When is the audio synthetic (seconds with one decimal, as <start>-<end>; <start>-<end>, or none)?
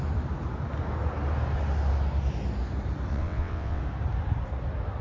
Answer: 3.1-3.8